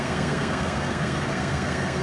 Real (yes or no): no